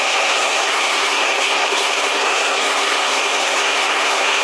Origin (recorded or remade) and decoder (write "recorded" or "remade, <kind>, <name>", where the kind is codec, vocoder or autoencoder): remade, codec, SNAC